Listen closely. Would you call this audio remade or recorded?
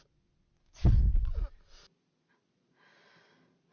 recorded